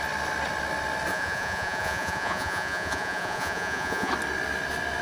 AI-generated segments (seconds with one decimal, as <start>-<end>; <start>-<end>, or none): 1.1-4.1